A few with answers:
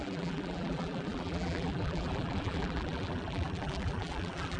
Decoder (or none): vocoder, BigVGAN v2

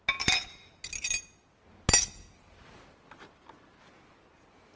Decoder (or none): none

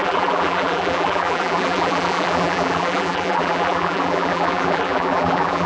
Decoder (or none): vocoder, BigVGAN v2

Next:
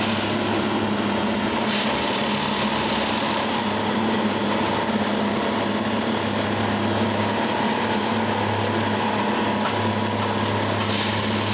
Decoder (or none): none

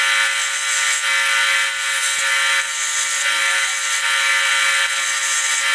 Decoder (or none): none